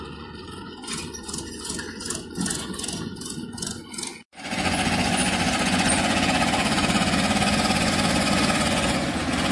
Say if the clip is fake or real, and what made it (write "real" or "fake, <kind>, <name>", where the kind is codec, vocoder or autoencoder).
fake, vocoder, Vocos